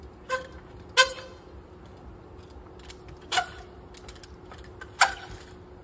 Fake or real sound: real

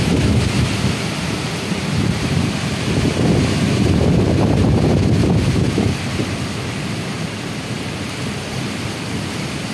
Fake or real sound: fake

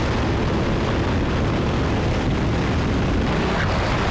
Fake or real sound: fake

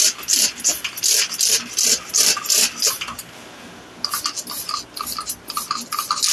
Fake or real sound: real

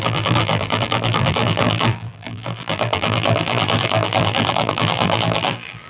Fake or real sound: fake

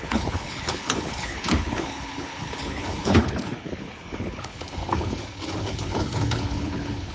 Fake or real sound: fake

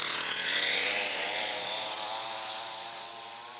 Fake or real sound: fake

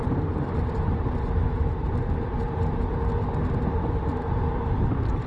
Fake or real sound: real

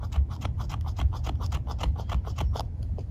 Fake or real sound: fake